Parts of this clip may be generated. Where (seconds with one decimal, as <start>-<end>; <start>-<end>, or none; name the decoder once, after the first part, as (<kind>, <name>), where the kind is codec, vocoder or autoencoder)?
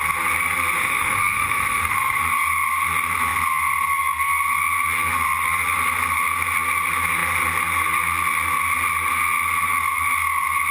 0.8-2.2 (autoencoder, DAC-VAE)